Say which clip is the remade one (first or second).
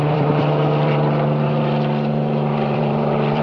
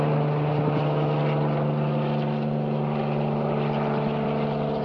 first